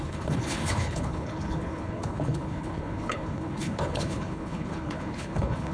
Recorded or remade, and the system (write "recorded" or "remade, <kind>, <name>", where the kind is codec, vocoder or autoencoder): remade, codec, HILCodec